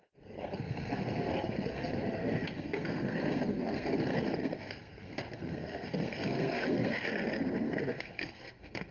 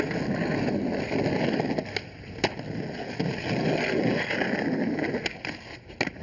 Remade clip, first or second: first